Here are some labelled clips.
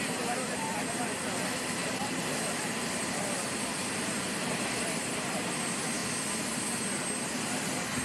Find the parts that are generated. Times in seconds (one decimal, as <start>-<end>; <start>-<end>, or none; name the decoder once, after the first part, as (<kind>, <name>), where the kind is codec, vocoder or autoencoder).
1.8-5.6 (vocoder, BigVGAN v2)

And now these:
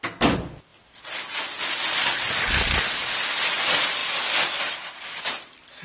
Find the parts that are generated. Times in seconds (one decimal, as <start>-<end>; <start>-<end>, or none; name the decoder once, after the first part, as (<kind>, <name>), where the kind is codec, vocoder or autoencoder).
none

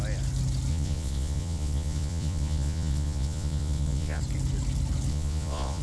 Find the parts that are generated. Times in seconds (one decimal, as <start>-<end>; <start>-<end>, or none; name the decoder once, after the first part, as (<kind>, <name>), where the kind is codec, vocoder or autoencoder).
0.7-4.2 (vocoder, Vocos); 5.1-5.8

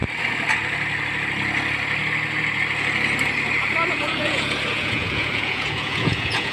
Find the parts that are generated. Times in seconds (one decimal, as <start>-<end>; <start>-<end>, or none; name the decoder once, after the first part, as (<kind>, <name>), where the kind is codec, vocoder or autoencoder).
3.9-6.5 (vocoder, Vocos)

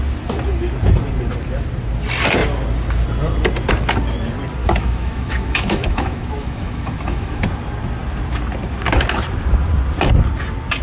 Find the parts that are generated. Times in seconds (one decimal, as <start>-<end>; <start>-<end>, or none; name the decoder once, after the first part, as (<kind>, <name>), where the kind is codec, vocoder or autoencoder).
4.6-7.4 (autoencoder, DAC-VAE)

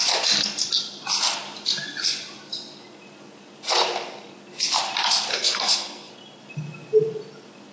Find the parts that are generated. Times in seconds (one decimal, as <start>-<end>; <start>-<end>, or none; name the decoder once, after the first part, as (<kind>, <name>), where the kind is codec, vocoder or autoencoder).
5.3-6.1 (codec, SNAC)

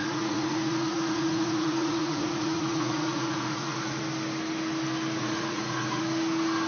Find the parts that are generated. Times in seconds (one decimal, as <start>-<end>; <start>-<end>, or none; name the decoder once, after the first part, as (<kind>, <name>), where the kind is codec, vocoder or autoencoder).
0.0-4.0 (vocoder, Vocos); 5.2-6.0